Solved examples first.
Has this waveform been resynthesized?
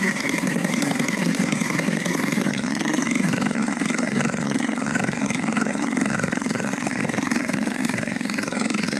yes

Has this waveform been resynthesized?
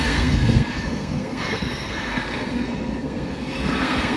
yes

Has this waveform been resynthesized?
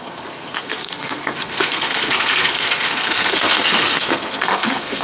yes